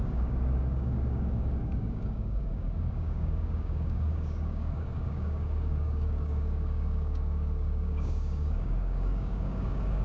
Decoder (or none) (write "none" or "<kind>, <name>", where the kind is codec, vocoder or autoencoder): codec, DAC